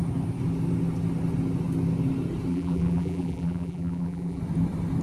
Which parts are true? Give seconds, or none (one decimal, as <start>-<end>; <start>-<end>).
0.0-2.5; 4.4-5.0